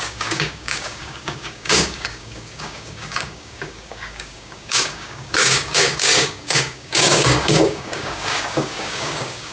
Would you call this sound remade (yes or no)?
yes